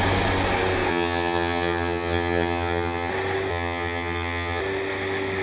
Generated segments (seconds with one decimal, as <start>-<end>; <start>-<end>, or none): 0.9-3.1; 3.5-4.6